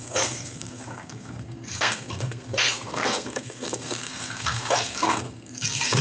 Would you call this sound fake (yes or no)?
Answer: yes